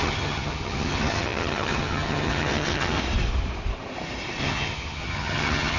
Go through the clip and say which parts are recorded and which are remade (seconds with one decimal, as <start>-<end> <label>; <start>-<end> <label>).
0.0-3.0 remade; 3.0-4.4 recorded; 4.4-5.8 remade